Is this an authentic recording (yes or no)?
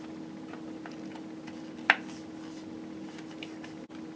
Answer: yes